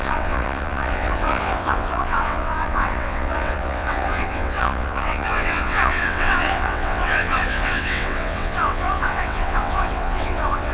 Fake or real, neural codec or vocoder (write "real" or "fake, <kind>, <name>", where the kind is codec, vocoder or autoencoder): fake, vocoder, WaveNeXt